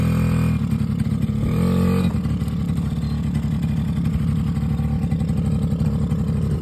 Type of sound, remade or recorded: recorded